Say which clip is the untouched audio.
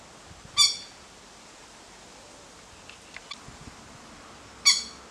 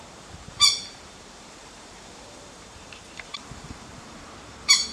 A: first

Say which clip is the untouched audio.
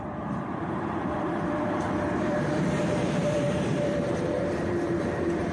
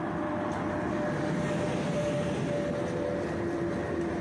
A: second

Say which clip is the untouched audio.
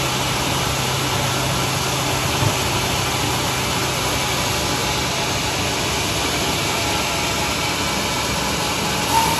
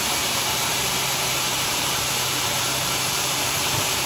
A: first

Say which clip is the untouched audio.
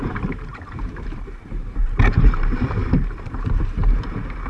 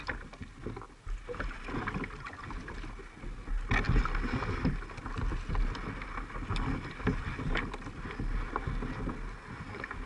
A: second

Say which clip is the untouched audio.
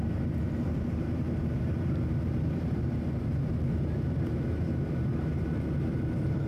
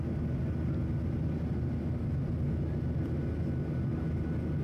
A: second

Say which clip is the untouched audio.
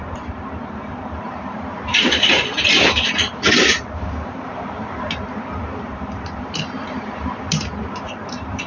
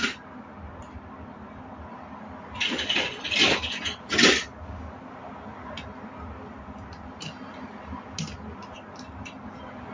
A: second